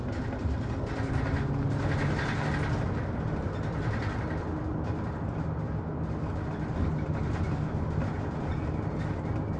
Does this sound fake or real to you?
real